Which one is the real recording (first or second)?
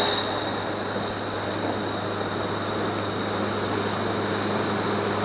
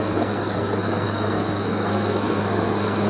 first